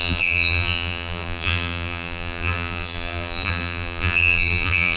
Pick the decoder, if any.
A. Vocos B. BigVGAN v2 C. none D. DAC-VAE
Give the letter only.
B